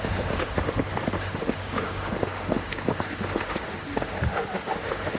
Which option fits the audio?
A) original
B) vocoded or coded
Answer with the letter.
B